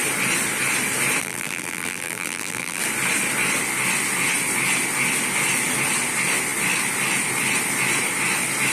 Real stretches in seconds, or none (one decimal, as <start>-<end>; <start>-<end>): 0.0-1.2; 2.8-8.7